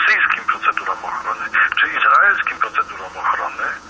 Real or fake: fake